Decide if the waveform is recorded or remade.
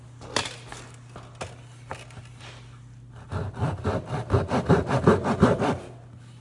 recorded